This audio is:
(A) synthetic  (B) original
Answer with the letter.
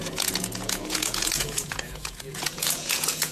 A